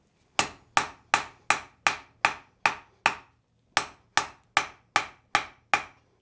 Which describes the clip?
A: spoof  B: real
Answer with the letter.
B